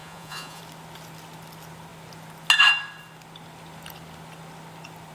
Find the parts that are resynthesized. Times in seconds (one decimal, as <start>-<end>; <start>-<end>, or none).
0.0-0.6